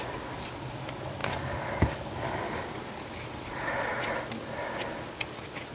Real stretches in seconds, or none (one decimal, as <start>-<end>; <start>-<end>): 0.0-1.2; 2.8-5.7

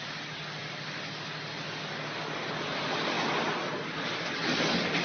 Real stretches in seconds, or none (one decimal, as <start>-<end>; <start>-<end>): 0.0-5.0

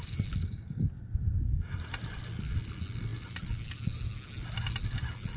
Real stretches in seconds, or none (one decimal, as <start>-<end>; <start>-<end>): 0.0-0.4; 0.9-5.4

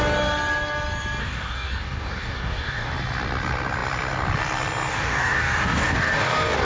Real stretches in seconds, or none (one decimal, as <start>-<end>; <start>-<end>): 0.0-1.2; 2.9-4.9